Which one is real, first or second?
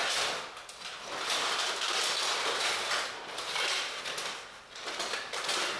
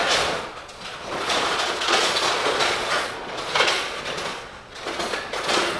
first